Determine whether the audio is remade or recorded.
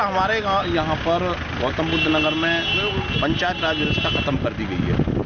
recorded